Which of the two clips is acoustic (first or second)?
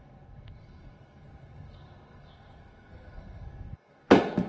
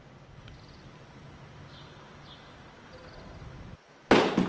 second